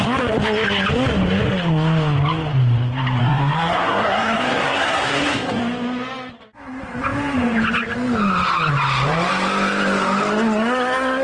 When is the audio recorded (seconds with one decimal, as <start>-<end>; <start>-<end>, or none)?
0.0-3.2; 5.6-11.2